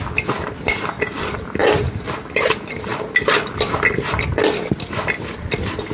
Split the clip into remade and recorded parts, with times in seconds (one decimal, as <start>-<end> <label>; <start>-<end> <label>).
0.0-5.9 recorded